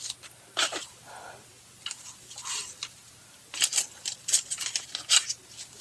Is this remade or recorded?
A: recorded